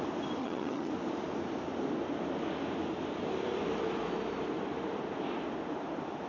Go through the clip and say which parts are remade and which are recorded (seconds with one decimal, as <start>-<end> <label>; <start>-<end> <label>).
0.0-0.4 recorded; 0.4-0.9 remade; 0.9-6.3 recorded